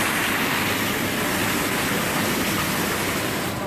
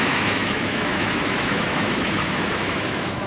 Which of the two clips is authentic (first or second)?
first